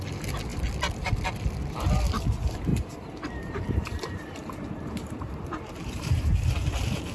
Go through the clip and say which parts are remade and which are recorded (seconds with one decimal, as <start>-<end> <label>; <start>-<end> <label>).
0.0-2.7 recorded; 2.7-6.1 remade; 6.1-7.1 recorded